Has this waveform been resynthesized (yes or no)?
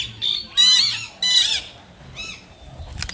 no